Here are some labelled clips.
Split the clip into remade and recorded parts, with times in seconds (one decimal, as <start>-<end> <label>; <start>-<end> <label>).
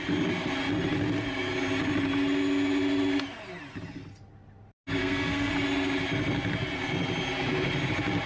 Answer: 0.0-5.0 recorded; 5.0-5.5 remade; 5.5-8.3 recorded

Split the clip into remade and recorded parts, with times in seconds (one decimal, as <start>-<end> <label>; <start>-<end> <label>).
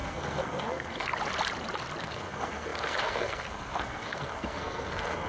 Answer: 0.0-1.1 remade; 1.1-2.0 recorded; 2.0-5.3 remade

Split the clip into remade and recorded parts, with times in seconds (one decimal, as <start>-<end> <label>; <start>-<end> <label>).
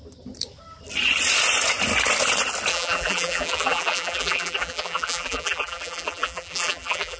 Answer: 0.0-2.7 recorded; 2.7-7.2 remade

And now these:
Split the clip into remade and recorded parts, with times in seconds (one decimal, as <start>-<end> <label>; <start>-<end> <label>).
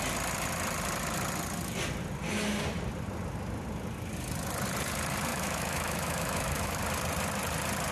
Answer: 0.0-5.3 recorded; 5.3-6.8 remade; 6.8-7.9 recorded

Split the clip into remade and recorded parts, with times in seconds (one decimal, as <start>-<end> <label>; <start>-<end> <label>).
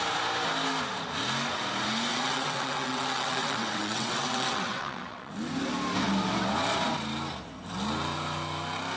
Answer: 0.0-2.1 recorded; 2.1-5.3 remade; 5.3-9.0 recorded